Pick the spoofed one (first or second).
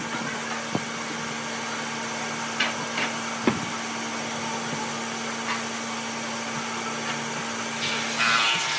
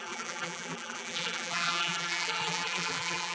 second